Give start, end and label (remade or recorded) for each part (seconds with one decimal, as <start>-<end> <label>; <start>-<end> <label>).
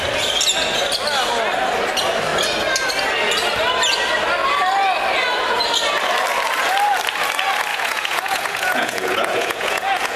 0.0-7.7 recorded; 7.7-10.2 remade